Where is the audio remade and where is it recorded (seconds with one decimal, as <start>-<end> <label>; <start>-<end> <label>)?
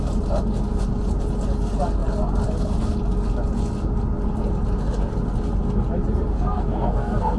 0.0-6.3 recorded; 6.3-7.4 remade